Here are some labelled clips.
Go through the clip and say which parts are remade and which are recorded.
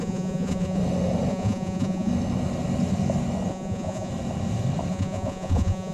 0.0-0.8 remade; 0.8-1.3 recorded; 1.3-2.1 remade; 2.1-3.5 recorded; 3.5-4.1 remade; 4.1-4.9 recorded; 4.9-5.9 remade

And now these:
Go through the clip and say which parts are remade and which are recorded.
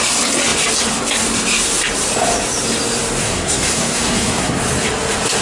0.0-3.2 recorded; 3.2-4.6 remade; 4.6-5.4 recorded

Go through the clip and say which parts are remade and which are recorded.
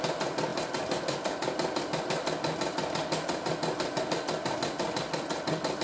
0.0-5.8 recorded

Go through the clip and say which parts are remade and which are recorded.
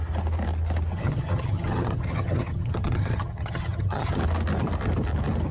0.0-0.9 recorded; 0.9-4.2 remade; 4.2-5.5 recorded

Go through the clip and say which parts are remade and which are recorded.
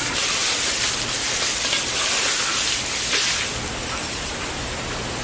0.0-5.2 recorded